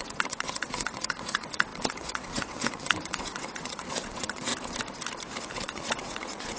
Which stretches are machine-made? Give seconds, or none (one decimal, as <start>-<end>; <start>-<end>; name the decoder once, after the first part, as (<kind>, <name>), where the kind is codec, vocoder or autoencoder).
0.0-4.5 (vocoder, WaveNeXt); 5.5-6.6